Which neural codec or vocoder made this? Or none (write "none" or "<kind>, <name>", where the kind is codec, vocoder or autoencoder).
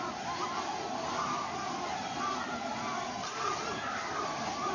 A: none